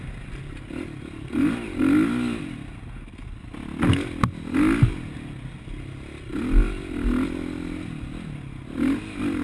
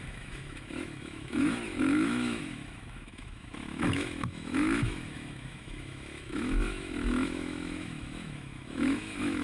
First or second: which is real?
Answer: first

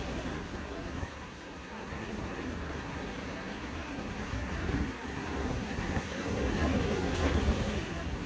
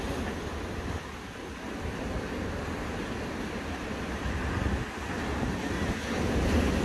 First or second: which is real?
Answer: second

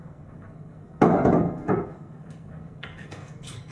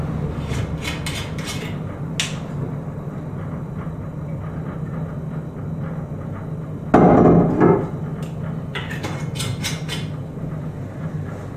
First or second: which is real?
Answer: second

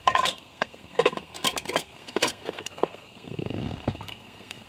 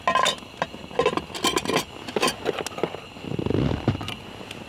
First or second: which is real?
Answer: second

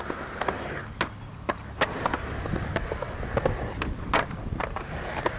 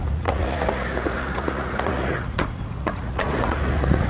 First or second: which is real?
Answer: first